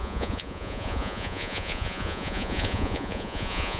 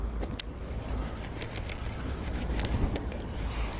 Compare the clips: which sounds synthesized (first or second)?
first